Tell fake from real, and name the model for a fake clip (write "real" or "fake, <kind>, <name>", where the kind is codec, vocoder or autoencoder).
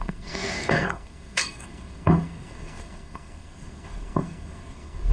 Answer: fake, codec, SNAC